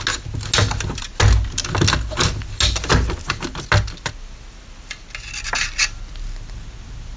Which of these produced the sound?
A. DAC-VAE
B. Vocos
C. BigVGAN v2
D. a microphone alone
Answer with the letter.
D